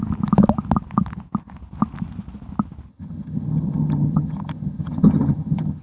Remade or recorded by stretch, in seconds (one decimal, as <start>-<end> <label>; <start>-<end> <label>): 0.0-2.9 recorded; 2.9-5.8 remade